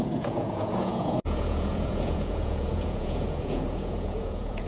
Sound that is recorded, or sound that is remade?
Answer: remade